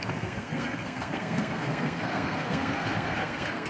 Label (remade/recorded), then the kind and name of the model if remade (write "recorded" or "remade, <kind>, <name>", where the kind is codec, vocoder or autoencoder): remade, codec, SNAC